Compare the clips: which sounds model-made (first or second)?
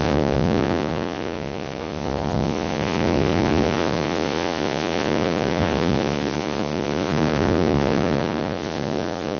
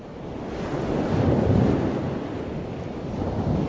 first